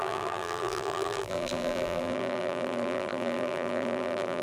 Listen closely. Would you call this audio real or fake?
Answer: fake